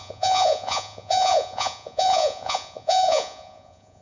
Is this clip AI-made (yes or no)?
yes